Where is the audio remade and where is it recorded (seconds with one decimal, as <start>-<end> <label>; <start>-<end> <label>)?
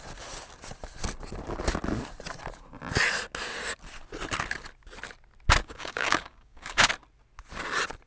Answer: 0.0-5.6 recorded; 5.6-6.9 remade; 6.9-8.1 recorded